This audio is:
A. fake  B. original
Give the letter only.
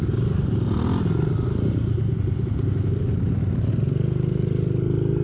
B